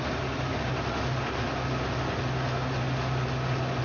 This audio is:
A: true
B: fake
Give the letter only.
A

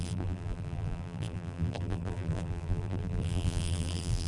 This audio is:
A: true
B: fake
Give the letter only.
B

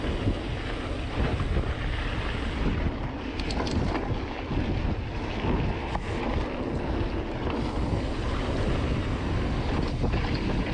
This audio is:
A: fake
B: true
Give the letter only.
B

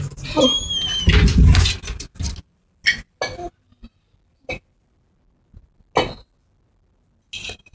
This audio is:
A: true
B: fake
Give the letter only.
A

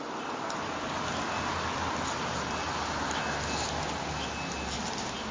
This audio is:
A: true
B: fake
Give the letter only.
A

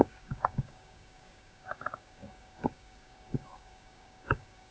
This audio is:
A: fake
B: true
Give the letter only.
A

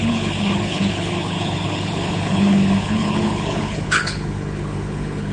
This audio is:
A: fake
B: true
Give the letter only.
A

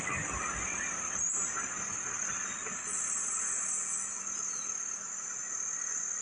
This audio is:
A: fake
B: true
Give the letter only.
B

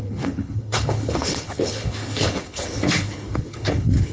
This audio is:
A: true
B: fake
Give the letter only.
B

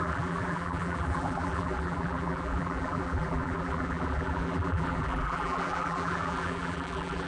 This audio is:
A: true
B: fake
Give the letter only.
B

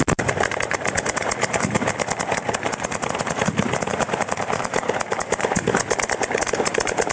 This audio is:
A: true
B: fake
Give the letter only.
B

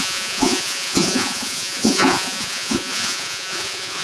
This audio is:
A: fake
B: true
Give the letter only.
A